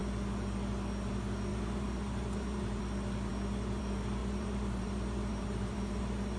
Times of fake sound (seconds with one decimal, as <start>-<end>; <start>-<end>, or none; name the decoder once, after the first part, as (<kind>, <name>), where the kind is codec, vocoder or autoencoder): 1.5-2.8 (vocoder, BigVGAN v2); 4.2-6.0